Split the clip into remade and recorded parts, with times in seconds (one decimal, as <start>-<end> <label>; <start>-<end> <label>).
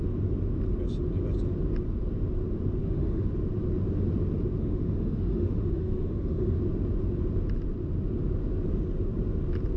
0.0-2.8 recorded; 2.8-3.3 remade; 3.3-4.6 recorded; 4.6-6.6 remade; 6.6-9.8 recorded